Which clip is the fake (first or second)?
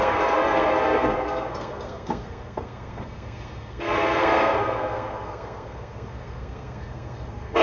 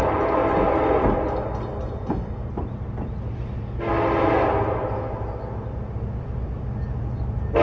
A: first